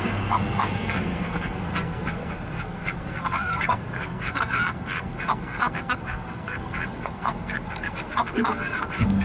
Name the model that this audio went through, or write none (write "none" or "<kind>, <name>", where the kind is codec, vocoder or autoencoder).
codec, SNAC